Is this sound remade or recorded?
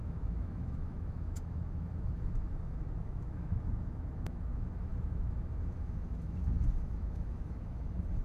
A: remade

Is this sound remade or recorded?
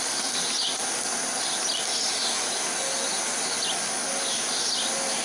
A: recorded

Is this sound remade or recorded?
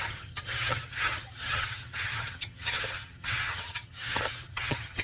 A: remade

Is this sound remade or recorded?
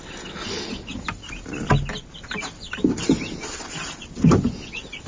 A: recorded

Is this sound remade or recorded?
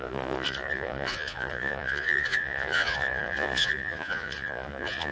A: remade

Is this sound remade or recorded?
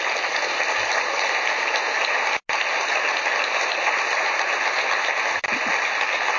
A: recorded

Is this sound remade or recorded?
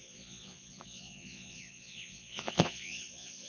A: remade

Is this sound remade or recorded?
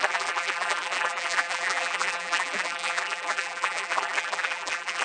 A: remade